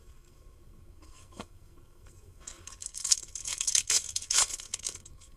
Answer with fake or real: fake